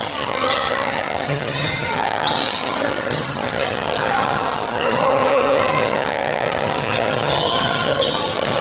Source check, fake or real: fake